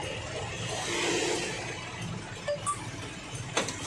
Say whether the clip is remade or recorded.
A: recorded